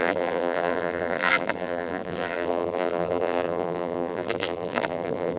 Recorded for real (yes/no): no